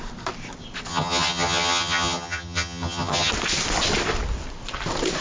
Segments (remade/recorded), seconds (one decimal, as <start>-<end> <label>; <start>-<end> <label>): 0.0-0.9 recorded; 0.9-3.3 remade; 3.3-5.2 recorded